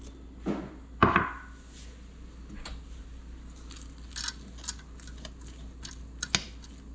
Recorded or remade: recorded